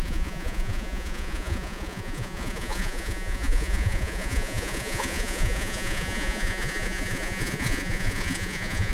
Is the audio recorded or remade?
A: remade